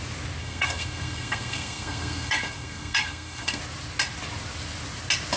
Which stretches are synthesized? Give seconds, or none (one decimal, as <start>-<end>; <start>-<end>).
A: 0.4-3.6